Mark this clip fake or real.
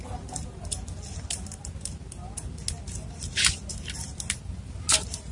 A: real